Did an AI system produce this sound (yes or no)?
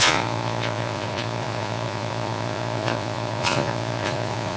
yes